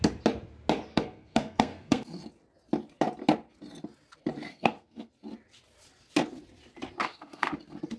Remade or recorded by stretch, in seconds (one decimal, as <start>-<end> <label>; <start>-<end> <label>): 0.0-0.9 recorded; 0.9-2.2 remade; 2.2-4.5 recorded; 4.5-5.1 remade; 5.1-7.0 recorded; 7.0-7.5 remade; 7.5-8.0 recorded